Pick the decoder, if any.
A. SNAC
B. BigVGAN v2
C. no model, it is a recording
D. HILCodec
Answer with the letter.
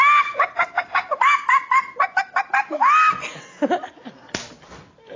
C